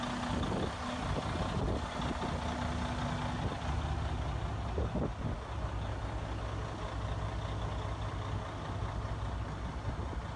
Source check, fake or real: real